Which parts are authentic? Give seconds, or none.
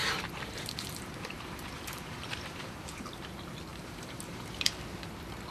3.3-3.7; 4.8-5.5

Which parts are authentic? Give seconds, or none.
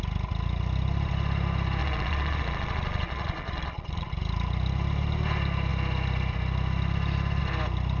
0.0-1.8; 4.1-8.0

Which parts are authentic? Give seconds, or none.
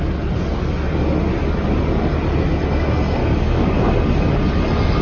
0.0-3.2; 3.8-5.0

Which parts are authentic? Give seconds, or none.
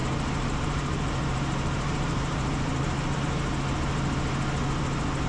3.2-5.3